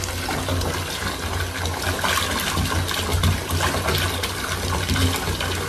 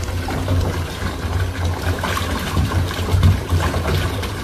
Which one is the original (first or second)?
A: first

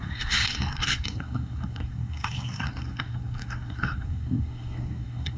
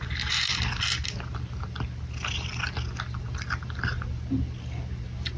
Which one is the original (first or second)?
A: second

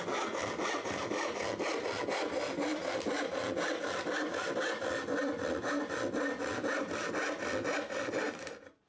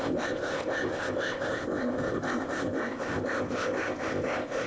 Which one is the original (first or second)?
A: first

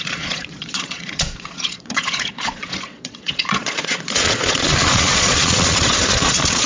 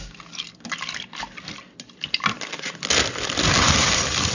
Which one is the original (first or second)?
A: second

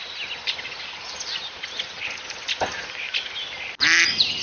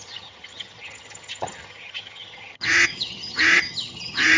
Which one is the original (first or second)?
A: first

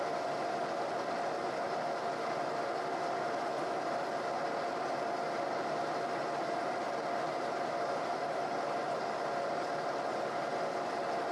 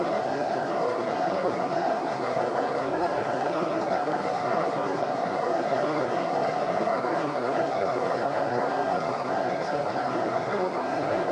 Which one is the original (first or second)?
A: first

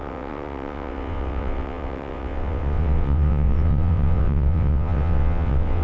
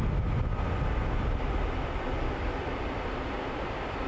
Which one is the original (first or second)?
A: second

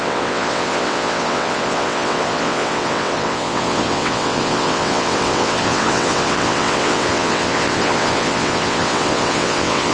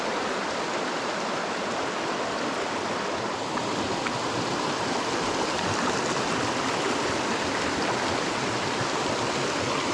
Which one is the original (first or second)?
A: second